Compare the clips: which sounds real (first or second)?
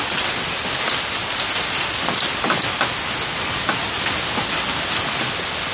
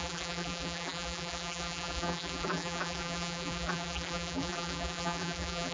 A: first